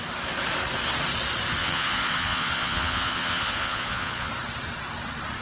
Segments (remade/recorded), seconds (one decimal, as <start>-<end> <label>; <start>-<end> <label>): 0.0-1.6 recorded; 1.6-4.3 remade; 4.3-5.4 recorded